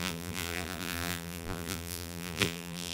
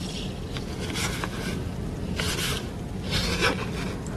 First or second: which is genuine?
second